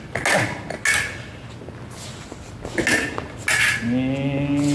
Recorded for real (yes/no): yes